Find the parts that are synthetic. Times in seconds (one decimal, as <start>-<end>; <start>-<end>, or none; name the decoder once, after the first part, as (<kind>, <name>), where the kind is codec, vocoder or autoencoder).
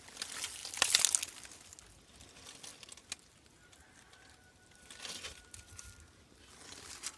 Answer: none